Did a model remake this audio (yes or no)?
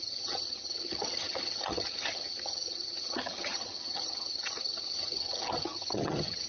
yes